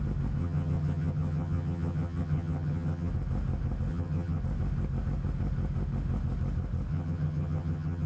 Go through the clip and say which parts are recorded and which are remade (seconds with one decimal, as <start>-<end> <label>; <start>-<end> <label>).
0.0-0.4 recorded; 0.4-3.1 remade; 3.1-3.9 recorded; 3.9-4.4 remade; 4.4-6.9 recorded; 6.9-8.1 remade